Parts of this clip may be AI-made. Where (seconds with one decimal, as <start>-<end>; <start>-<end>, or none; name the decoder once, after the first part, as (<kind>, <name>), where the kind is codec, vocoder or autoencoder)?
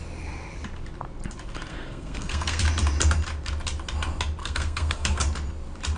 1.7-2.6 (codec, SNAC); 4.4-5.2